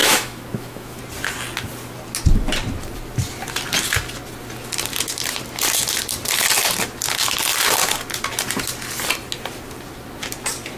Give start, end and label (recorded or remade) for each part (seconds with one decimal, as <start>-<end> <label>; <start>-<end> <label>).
0.0-1.0 remade; 1.0-10.8 recorded